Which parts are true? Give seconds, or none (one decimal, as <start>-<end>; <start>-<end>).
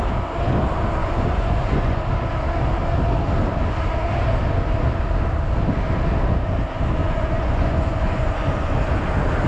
0.0-1.0; 2.0-7.0; 8.8-9.5